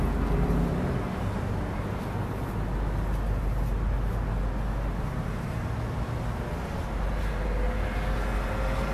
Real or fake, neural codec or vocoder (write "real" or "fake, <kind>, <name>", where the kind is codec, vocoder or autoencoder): real